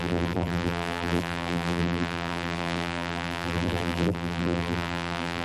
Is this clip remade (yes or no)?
yes